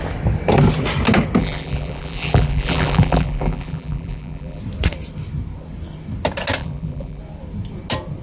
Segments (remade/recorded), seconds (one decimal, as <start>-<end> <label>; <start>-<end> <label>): 0.0-1.4 recorded; 1.4-4.6 remade; 4.6-6.6 recorded; 6.6-7.2 remade; 7.2-8.2 recorded